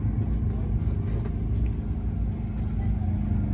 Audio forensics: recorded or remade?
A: recorded